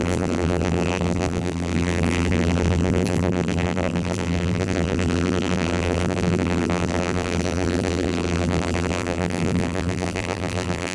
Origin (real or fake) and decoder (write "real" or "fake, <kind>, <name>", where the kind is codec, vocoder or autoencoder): fake, vocoder, BigVGAN v2